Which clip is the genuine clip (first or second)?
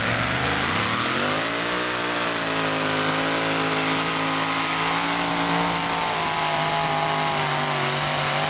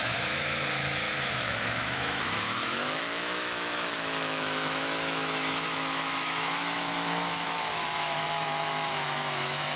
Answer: first